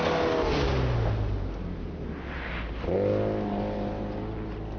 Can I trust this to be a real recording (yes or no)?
yes